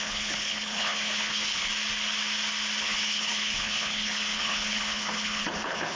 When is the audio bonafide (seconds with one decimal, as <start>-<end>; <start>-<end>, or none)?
1.7-2.8